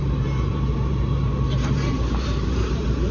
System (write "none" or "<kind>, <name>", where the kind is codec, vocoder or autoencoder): vocoder, BigVGAN v2